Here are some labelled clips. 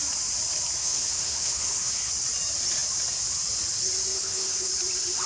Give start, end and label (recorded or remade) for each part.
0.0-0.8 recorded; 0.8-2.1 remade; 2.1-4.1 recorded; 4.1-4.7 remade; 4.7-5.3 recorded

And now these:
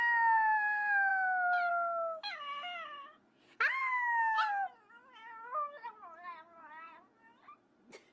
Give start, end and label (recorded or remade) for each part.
0.0-8.1 recorded